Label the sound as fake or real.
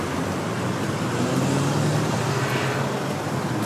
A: real